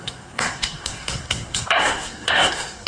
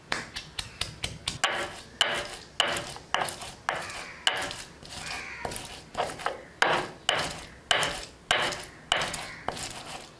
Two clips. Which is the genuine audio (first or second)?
second